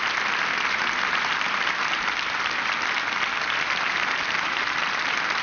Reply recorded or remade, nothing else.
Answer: remade